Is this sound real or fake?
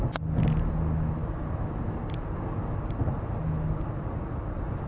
real